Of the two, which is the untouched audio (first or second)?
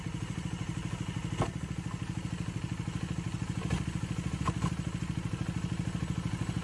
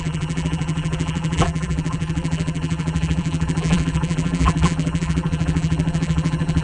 first